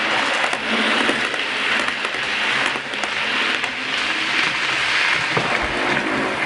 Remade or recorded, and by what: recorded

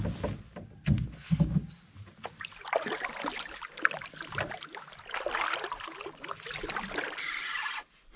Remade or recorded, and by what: recorded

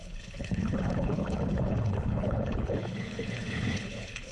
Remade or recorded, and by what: remade, codec, HILCodec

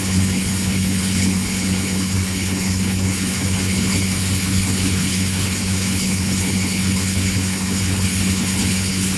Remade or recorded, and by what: remade, codec, HILCodec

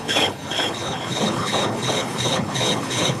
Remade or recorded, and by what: remade, codec, HILCodec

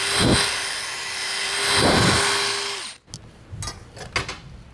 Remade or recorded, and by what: recorded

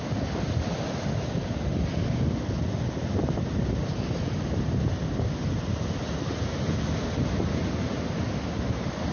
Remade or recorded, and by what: recorded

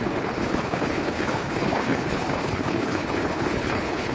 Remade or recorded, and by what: remade, codec, HILCodec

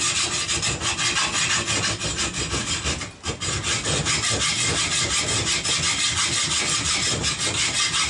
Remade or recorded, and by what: recorded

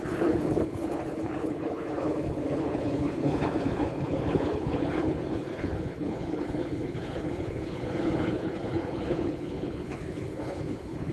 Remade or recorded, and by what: remade, codec, HILCodec